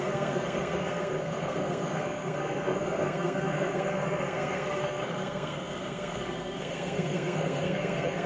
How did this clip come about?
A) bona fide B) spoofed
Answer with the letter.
B